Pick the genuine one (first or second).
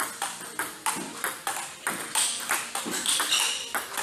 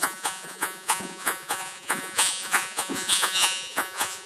first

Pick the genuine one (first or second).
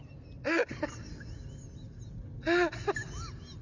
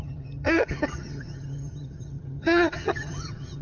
first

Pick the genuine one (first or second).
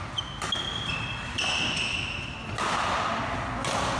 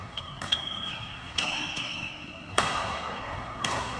first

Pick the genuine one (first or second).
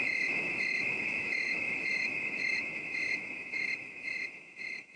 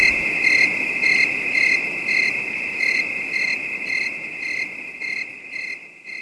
second